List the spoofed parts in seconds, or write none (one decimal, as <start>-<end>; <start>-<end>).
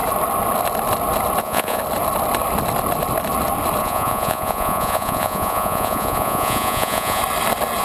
1.4-1.8; 3.8-7.2